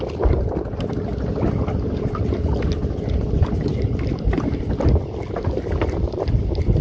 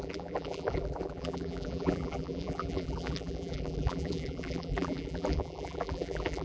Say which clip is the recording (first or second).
first